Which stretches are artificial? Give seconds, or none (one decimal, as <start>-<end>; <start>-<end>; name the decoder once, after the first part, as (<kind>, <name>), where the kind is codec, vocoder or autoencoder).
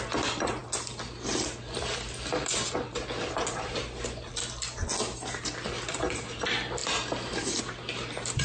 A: none